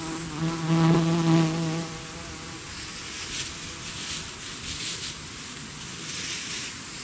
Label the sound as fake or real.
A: real